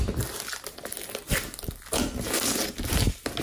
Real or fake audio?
real